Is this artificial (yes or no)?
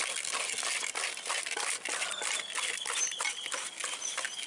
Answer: no